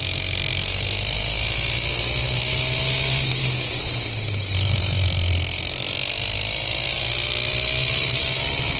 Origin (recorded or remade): recorded